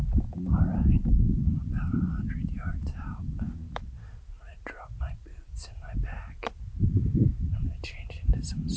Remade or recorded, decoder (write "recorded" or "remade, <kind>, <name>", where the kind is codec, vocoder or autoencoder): remade, vocoder, BigVGAN v2